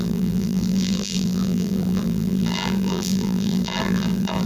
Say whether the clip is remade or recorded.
remade